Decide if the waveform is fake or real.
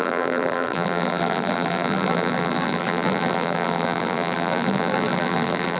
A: fake